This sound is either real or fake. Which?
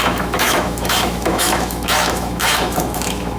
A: fake